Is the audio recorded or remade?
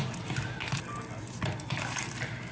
recorded